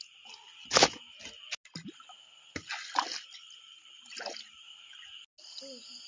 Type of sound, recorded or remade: recorded